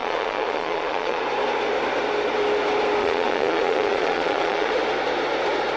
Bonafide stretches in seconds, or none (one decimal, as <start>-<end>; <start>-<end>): 1.2-3.0; 4.7-5.8

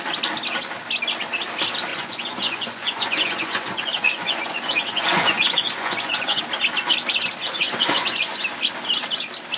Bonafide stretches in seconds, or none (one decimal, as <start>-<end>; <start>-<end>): 0.0-1.9; 6.4-7.4; 8.4-9.6